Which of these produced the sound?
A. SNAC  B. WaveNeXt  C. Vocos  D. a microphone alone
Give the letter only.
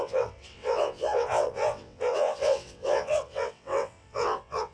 B